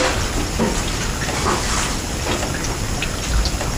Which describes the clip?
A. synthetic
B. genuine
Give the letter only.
B